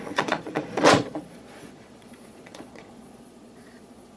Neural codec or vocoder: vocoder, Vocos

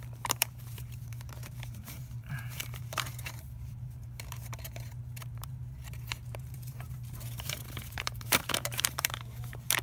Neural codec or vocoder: vocoder, BigVGAN v2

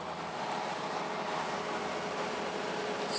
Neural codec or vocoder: none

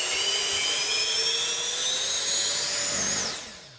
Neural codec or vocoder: none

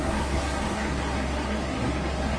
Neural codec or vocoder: codec, SNAC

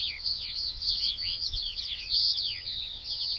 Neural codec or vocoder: vocoder, WaveNeXt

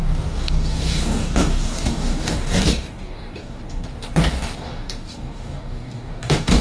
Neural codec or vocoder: codec, DAC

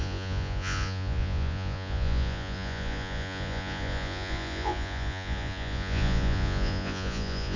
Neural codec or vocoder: vocoder, Vocos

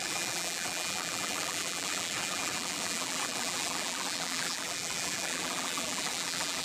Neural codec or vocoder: vocoder, BigVGAN v2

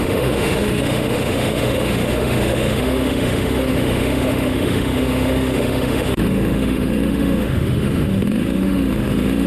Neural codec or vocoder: autoencoder, DAC-VAE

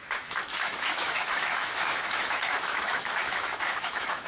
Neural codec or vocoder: autoencoder, DAC-VAE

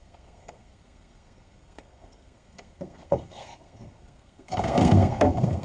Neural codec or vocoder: codec, SNAC